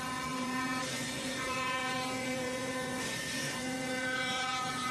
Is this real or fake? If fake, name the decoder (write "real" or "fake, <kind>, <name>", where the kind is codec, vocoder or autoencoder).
fake, vocoder, Vocos